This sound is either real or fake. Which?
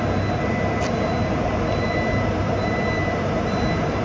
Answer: fake